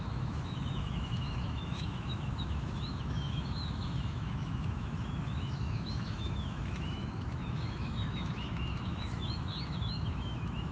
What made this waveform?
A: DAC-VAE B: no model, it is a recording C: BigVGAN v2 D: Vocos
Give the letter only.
A